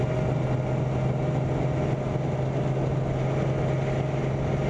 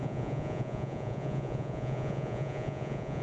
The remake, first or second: second